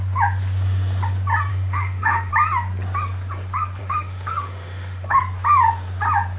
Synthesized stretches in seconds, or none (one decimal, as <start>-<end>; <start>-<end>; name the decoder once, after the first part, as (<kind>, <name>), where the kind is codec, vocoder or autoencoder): 1.5-2.3 (autoencoder, DAC-VAE); 3.8-5.2